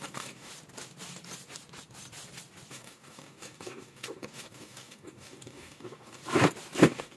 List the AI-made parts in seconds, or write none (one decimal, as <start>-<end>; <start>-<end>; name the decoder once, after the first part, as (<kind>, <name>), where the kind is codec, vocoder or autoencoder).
0.0-0.5 (codec, DAC); 2.7-6.2; 6.8-7.2